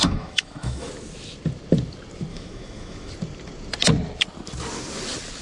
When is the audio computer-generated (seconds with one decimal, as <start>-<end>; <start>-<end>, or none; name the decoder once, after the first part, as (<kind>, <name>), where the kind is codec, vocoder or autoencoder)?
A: 0.0-0.9 (autoencoder, DAC-VAE); 2.3-3.1